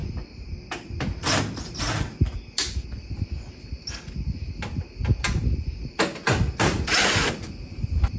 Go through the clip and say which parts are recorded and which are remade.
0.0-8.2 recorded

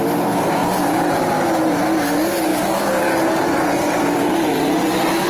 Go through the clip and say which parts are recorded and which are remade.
0.0-0.6 recorded; 0.6-1.3 remade; 1.3-2.5 recorded; 2.5-5.3 remade

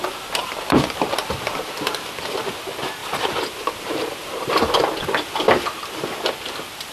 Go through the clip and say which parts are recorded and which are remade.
0.0-0.4 recorded; 0.4-2.5 remade; 2.5-3.0 recorded; 3.0-4.8 remade; 4.8-6.9 recorded

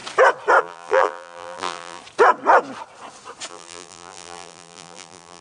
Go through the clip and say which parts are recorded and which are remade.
0.0-0.6 recorded; 0.6-2.0 remade; 2.0-3.5 recorded; 3.5-5.4 remade

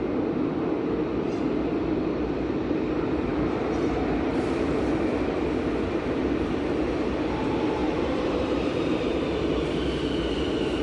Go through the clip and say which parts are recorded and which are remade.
0.0-7.8 recorded; 7.8-9.2 remade; 9.2-10.8 recorded

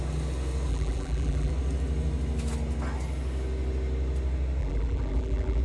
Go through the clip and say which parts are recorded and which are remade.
0.0-0.7 recorded; 0.7-1.5 remade; 1.5-4.6 recorded; 4.6-5.6 remade